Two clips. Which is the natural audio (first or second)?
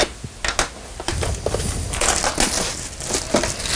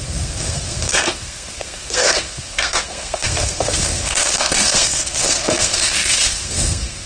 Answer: first